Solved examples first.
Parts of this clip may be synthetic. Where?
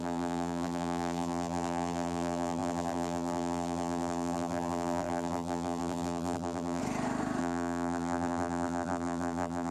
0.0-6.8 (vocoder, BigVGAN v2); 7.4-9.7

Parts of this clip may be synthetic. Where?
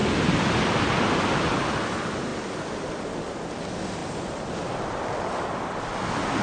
none